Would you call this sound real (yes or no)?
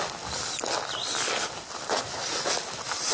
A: yes